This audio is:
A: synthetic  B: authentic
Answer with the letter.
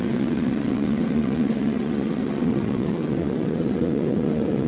A